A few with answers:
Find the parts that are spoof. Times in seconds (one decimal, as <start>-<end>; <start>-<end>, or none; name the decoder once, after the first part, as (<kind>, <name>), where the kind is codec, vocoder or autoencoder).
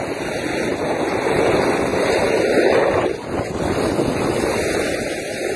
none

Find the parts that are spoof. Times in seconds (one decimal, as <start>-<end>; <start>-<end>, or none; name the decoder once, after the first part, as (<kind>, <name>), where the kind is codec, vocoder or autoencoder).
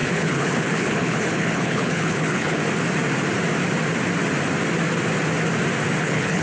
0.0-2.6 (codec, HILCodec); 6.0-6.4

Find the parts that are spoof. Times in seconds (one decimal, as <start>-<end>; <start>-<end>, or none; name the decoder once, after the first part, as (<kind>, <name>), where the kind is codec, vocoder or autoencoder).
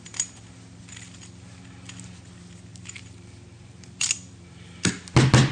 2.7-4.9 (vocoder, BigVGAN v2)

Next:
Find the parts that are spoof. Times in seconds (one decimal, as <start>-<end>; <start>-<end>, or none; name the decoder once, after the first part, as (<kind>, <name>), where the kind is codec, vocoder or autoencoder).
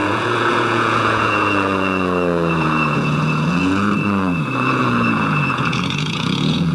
0.0-6.7 (vocoder, Vocos)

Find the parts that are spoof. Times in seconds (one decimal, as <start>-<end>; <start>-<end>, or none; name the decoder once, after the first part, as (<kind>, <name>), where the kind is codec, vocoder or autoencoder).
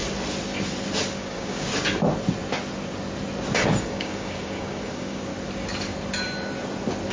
1.1-1.7 (codec, DAC); 3.8-5.3